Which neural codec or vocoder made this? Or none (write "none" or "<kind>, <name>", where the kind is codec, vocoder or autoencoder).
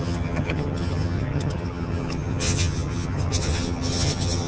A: vocoder, HiFi-GAN